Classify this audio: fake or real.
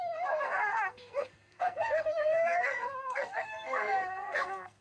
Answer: fake